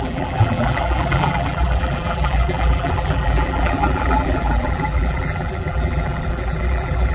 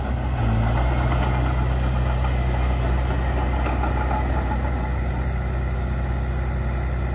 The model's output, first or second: first